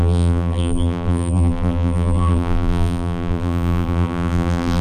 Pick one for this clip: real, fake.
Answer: fake